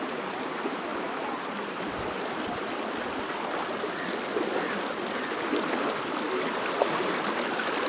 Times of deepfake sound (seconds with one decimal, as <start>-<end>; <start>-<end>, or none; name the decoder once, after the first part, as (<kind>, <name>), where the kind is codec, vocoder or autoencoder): none